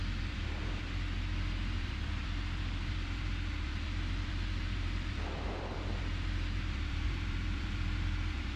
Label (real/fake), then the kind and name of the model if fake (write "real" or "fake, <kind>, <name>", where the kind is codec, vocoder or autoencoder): fake, vocoder, BigVGAN v2